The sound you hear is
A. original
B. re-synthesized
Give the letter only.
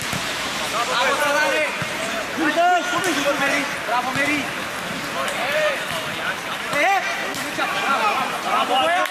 A